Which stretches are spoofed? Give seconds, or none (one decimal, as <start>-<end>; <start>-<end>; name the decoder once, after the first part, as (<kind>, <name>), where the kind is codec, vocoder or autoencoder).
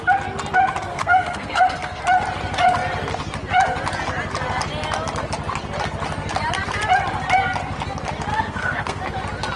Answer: 0.9-2.0 (codec, SNAC); 8.3-9.0